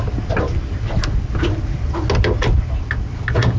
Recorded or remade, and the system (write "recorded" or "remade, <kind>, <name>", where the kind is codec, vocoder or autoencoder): recorded